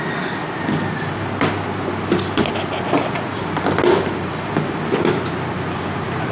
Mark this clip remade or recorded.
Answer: recorded